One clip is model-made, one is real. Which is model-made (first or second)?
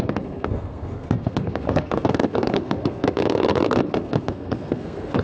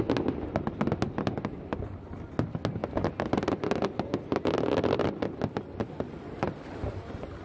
first